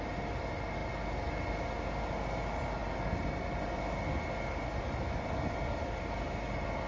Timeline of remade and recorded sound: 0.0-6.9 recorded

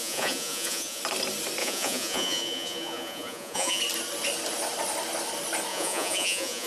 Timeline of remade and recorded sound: 0.0-1.0 remade; 1.0-1.6 recorded; 1.6-3.8 remade; 3.8-5.7 recorded; 5.7-6.7 remade

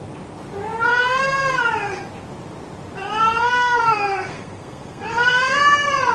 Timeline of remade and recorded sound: 0.0-0.9 recorded; 0.9-1.6 remade; 1.6-3.4 recorded; 3.4-5.6 remade; 5.6-6.1 recorded

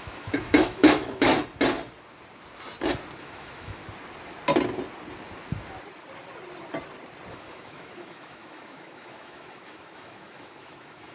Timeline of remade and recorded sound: 0.0-1.3 remade; 1.3-3.2 recorded; 3.2-3.8 remade; 3.8-7.3 recorded; 7.3-11.1 remade

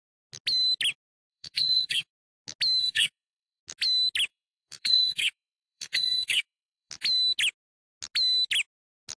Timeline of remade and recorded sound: 0.0-1.3 recorded; 1.3-2.1 remade; 2.1-2.8 recorded; 2.8-3.6 remade; 3.6-4.3 recorded; 4.3-6.9 remade; 6.9-9.2 recorded

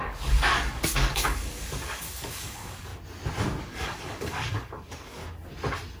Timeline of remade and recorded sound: 0.0-2.9 remade; 2.9-3.6 recorded; 3.6-5.2 remade; 5.2-6.0 recorded

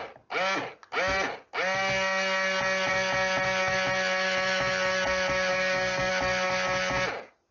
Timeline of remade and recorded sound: 0.0-5.5 recorded; 5.5-6.1 remade; 6.1-7.5 recorded